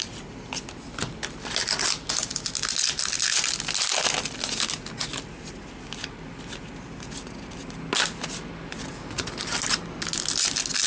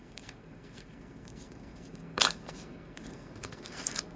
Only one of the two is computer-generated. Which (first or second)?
second